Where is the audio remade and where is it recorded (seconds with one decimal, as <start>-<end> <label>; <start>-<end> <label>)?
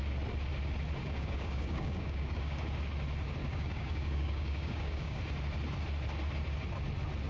0.0-1.0 recorded; 1.0-2.6 remade; 2.6-3.4 recorded; 3.4-5.2 remade; 5.2-7.3 recorded